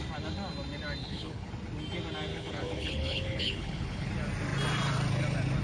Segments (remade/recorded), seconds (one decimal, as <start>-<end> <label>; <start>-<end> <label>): 0.0-1.0 recorded; 1.0-1.5 remade; 1.5-2.3 recorded; 2.3-4.1 remade; 4.1-5.6 recorded